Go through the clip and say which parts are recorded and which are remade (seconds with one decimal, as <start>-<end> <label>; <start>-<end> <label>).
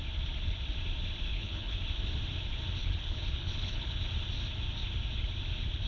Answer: 0.0-1.3 recorded; 1.3-1.8 remade; 1.8-2.8 recorded; 2.8-4.0 remade; 4.0-5.9 recorded